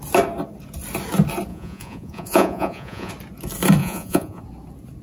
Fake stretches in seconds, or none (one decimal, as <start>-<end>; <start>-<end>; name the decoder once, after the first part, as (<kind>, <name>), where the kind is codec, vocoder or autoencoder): 1.5-3.1 (vocoder, Vocos); 3.8-4.4